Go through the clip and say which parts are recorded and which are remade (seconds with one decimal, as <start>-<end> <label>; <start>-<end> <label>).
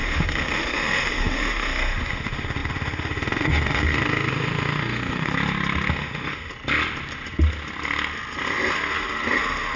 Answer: 0.0-5.3 remade; 5.3-5.9 recorded; 5.9-6.5 remade; 6.5-9.8 recorded